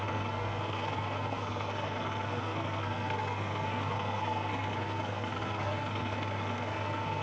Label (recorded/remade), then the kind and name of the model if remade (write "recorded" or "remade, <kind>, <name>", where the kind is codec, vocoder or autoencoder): remade, codec, SNAC